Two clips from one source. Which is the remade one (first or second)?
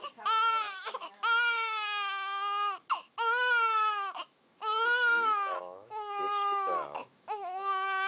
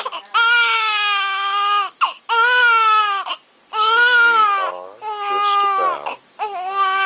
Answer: first